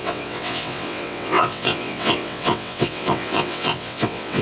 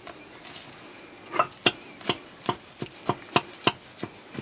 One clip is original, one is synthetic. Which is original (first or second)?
second